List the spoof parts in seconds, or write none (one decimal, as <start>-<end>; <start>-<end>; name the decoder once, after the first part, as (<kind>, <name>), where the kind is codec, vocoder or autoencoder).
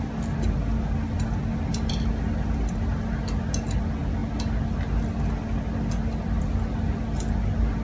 none